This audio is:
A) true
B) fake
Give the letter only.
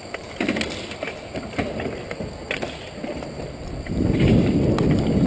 A